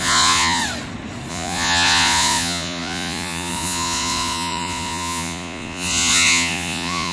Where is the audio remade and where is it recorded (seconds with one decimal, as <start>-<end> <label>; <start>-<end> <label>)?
0.0-0.6 remade; 0.6-1.3 recorded; 1.3-7.1 remade